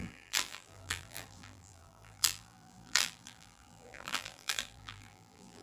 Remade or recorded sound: remade